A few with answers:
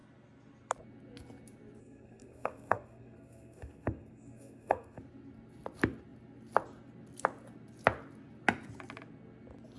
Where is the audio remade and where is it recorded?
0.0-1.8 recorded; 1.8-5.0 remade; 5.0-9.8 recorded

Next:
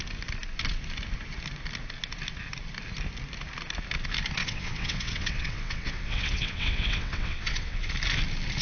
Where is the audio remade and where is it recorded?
0.0-4.4 recorded; 4.4-7.9 remade; 7.9-8.6 recorded

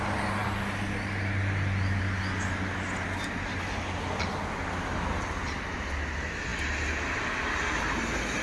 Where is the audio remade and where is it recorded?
0.0-8.4 recorded